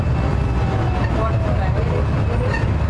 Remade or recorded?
recorded